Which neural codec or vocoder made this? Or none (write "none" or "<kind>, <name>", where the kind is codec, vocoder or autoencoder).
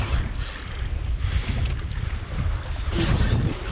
none